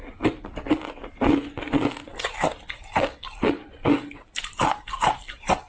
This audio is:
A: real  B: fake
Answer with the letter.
A